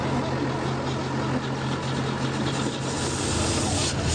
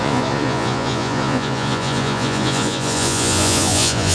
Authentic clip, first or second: first